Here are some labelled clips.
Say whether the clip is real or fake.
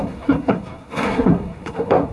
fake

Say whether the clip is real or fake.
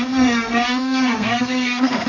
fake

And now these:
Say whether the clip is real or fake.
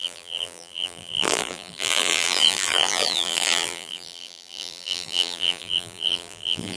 fake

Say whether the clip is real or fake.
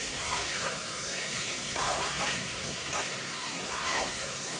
fake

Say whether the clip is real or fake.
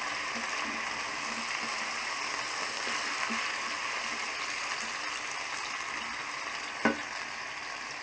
real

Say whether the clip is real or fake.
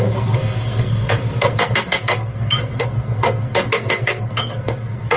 fake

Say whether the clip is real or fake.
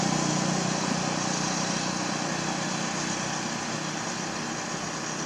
real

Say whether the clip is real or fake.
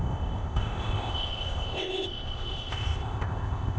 fake